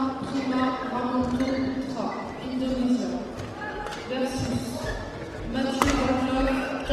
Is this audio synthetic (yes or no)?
no